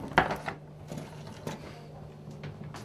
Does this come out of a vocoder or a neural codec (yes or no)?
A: no